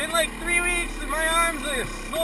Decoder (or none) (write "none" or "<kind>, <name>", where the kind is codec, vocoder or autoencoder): none